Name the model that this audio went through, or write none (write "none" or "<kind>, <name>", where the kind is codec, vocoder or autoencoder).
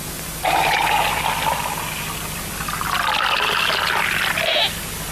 none